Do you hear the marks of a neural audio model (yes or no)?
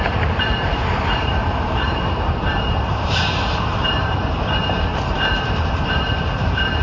yes